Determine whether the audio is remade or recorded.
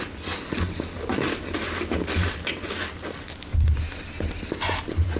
recorded